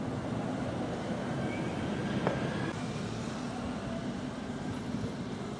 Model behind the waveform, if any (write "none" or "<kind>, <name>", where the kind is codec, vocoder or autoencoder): none